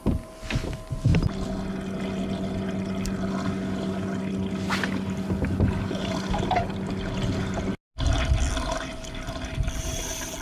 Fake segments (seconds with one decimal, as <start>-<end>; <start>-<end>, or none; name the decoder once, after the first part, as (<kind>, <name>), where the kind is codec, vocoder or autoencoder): none